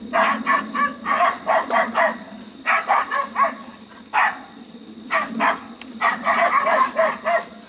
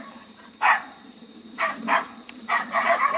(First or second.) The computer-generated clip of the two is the second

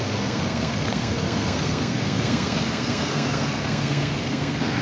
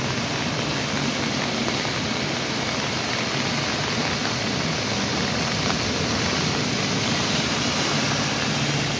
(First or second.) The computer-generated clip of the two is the first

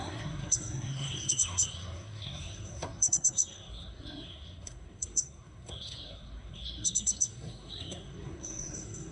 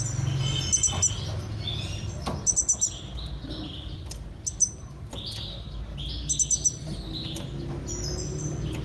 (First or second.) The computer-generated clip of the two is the first